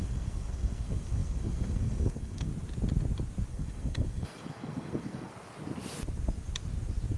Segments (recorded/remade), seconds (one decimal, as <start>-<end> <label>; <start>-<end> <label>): 0.0-2.5 remade; 2.5-3.5 recorded; 3.5-5.3 remade; 5.3-7.2 recorded